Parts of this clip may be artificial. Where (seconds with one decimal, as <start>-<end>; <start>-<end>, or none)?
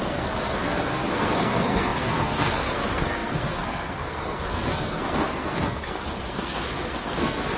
0.0-7.6